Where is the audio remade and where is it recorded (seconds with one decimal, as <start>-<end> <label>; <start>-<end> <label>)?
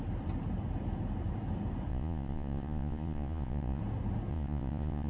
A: 0.0-1.9 recorded; 1.9-3.8 remade; 3.8-4.3 recorded; 4.3-5.1 remade